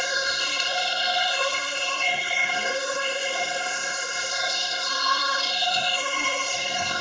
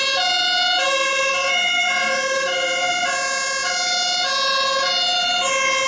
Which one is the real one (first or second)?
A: second